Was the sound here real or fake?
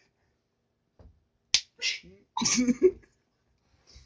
real